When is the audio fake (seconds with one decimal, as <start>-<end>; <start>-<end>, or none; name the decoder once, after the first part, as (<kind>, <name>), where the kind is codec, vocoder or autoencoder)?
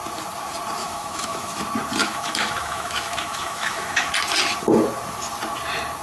0.8-1.6 (autoencoder, DAC-VAE); 2.0-4.1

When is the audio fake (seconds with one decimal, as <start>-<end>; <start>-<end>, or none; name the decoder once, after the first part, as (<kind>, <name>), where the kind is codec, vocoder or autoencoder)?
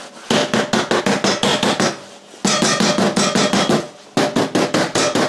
none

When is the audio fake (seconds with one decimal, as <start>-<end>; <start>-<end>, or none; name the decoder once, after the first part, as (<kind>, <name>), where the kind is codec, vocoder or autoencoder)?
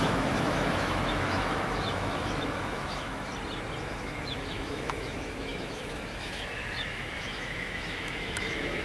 0.0-3.3 (autoencoder, DAC-VAE); 3.8-8.8